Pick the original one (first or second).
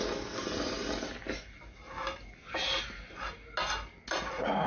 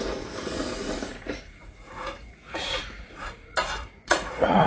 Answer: first